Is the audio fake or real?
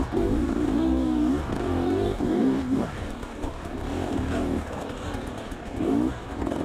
fake